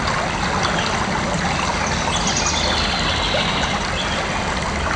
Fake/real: real